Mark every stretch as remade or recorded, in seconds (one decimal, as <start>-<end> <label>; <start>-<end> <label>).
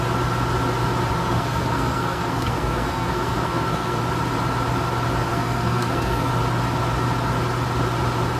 0.0-1.2 recorded; 1.2-4.0 remade; 4.0-5.3 recorded; 5.3-6.3 remade; 6.3-8.4 recorded